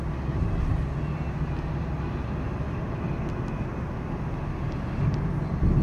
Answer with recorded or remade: recorded